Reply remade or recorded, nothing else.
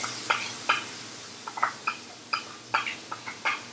recorded